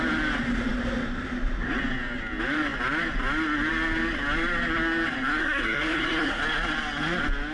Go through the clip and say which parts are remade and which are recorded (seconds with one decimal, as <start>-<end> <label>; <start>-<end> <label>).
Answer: 0.0-5.4 recorded; 5.4-6.4 remade; 6.4-7.5 recorded